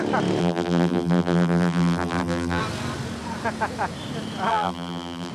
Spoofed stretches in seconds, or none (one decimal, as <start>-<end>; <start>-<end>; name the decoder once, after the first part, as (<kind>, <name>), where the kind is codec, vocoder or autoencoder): 0.4-2.6 (vocoder, BigVGAN v2); 4.5-5.3